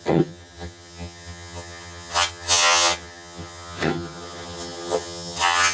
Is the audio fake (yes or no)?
yes